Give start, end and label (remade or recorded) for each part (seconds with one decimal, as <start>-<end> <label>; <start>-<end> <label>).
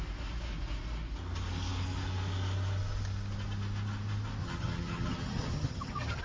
0.0-4.4 recorded; 4.4-6.2 remade